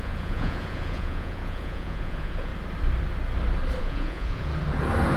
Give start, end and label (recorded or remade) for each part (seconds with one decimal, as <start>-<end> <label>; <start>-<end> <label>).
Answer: 0.0-2.5 remade; 2.5-3.8 recorded; 3.8-4.5 remade; 4.5-5.2 recorded